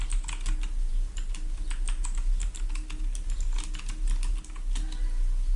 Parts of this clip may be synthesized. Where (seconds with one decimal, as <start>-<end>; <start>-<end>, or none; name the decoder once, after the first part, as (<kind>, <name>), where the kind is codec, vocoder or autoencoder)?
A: none